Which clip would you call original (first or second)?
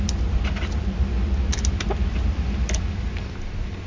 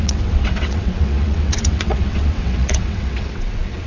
first